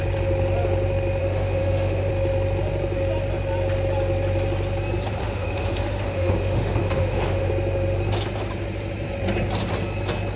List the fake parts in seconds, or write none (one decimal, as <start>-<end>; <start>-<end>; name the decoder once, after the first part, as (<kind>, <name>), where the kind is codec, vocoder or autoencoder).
1.2-2.1 (autoencoder, DAC-VAE); 5.2-7.5